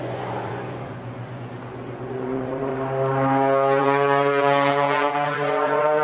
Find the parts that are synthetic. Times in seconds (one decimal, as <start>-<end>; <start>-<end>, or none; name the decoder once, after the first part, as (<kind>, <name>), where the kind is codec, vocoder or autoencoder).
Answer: 0.0-2.7 (vocoder, Vocos); 3.8-6.0